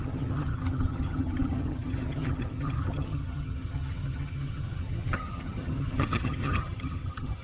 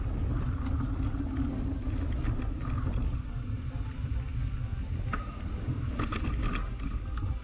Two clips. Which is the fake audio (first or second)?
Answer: first